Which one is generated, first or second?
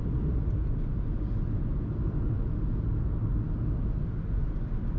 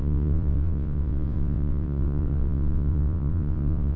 second